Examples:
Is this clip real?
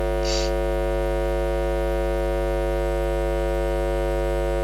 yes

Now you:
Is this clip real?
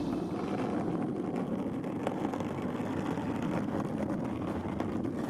yes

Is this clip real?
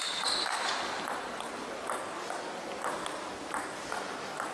yes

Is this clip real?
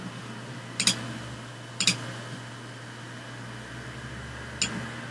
yes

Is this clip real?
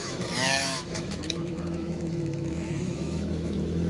no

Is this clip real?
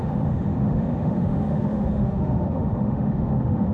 no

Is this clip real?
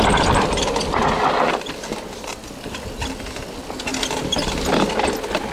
yes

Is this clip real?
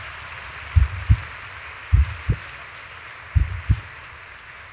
yes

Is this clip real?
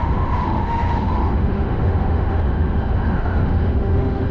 no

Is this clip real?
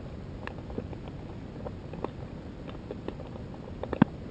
yes